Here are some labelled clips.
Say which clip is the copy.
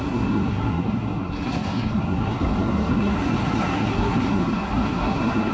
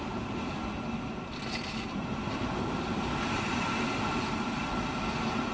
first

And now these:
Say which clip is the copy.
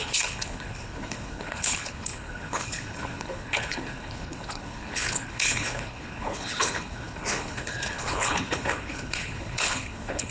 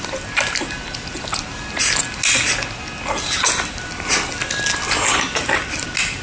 first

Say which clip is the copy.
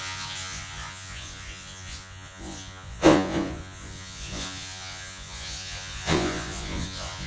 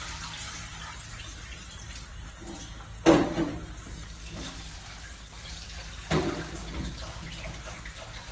first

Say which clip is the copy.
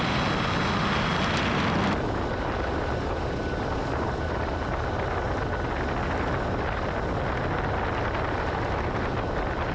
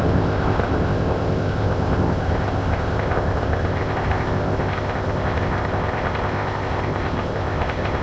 second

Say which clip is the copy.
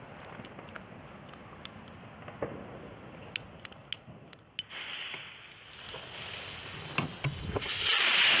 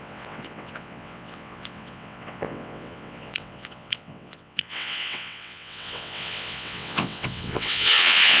second